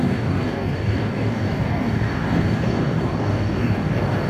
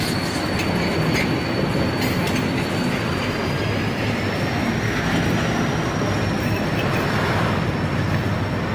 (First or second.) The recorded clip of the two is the second